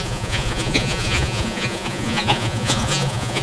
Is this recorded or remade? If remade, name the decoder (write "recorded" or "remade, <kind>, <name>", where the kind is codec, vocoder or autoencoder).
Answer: remade, vocoder, Vocos